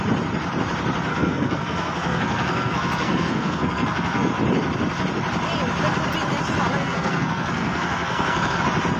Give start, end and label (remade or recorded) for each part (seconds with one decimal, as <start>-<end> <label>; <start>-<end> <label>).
0.0-1.1 recorded; 1.1-4.3 remade; 4.3-6.8 recorded; 6.8-8.6 remade; 8.6-9.0 recorded